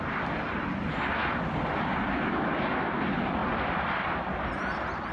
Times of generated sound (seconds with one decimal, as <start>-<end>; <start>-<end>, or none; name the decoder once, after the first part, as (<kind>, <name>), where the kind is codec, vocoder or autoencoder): none